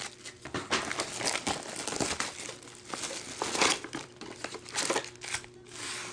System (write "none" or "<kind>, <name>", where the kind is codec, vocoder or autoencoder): none